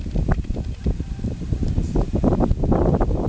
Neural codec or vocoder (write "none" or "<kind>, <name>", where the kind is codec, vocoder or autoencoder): none